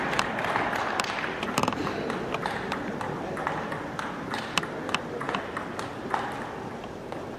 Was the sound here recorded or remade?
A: recorded